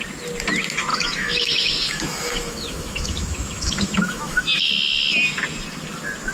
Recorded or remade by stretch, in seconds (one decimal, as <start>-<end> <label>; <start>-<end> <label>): 0.0-0.9 recorded; 0.9-4.7 remade; 4.7-6.3 recorded